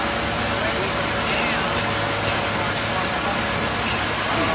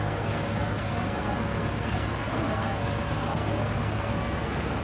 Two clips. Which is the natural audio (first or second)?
first